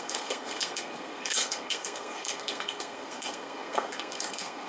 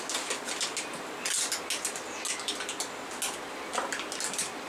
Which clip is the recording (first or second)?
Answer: second